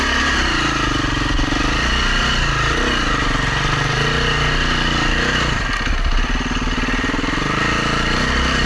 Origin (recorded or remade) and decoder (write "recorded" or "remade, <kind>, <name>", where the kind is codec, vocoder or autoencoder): recorded